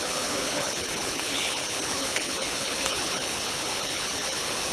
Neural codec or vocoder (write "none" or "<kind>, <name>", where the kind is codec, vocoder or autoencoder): codec, HILCodec